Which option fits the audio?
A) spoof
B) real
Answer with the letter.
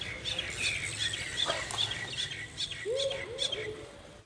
B